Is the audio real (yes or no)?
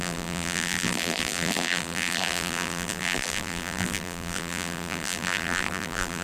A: no